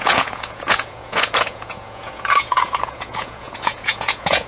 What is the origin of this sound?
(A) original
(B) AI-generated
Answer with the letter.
B